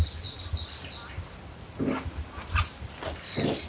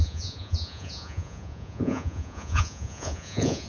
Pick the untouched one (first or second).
first